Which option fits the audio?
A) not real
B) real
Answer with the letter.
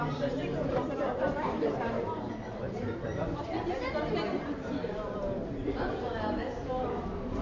A